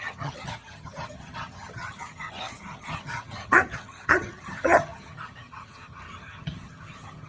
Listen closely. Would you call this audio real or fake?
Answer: fake